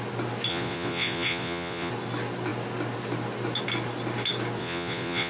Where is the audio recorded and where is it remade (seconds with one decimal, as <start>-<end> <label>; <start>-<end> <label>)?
0.0-0.5 recorded; 0.5-1.9 remade; 1.9-4.6 recorded; 4.6-5.3 remade